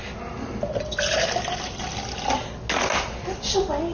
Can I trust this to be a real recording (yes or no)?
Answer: yes